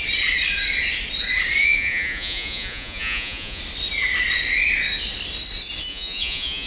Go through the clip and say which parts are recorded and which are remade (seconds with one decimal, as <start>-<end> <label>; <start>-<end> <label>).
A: 0.0-1.6 recorded; 1.6-3.6 remade; 3.6-5.9 recorded; 5.9-6.7 remade